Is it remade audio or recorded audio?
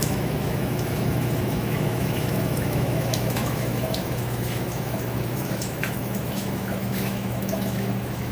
remade